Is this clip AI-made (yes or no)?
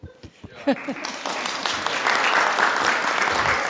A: no